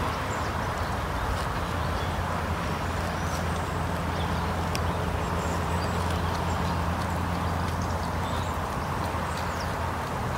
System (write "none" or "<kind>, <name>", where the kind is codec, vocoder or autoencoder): none